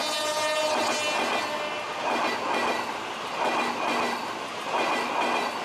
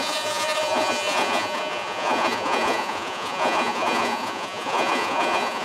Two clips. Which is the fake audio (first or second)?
second